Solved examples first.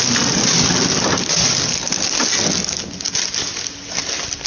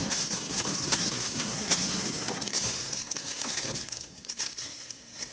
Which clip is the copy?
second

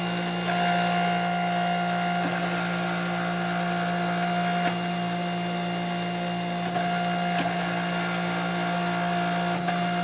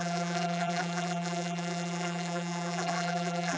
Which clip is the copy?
second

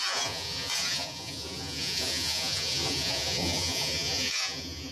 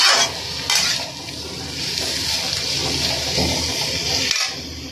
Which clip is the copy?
first